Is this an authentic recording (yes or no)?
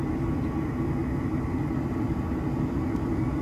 yes